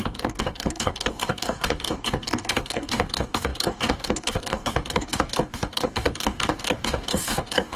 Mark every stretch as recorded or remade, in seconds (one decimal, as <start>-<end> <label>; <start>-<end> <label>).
0.0-7.8 remade